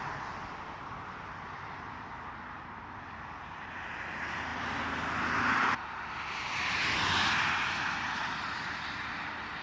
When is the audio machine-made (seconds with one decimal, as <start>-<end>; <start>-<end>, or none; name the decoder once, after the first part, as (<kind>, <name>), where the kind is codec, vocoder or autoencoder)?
none